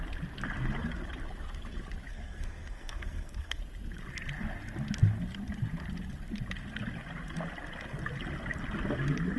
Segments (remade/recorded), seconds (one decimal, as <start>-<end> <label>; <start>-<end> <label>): 0.0-2.1 recorded; 2.1-3.6 remade; 3.6-9.4 recorded